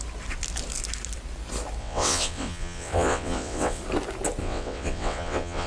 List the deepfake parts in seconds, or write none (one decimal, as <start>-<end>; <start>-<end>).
1.8-3.8; 4.4-5.7